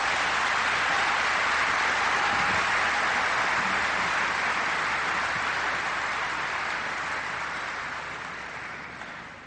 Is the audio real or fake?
real